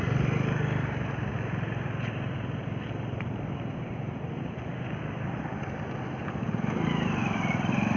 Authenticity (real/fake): real